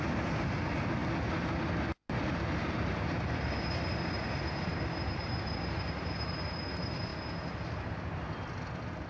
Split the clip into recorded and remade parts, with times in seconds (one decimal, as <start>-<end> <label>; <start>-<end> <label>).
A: 0.0-9.1 recorded